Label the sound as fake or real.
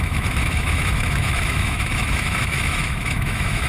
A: fake